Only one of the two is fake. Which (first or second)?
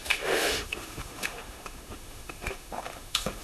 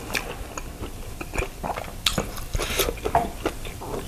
first